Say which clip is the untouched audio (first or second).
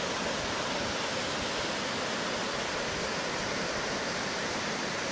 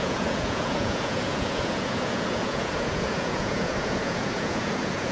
first